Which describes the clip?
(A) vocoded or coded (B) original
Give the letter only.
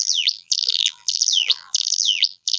A